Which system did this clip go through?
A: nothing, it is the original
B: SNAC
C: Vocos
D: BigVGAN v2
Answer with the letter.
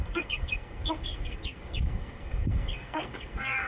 B